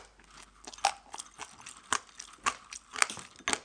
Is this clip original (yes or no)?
yes